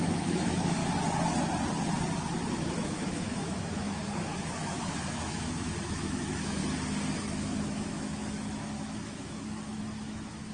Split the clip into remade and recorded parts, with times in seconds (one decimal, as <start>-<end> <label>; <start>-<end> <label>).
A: 0.0-0.8 remade; 0.8-2.5 recorded; 2.5-6.6 remade; 6.6-7.2 recorded; 7.2-10.5 remade